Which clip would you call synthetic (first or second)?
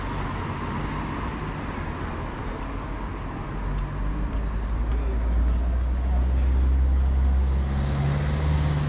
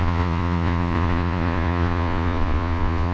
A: second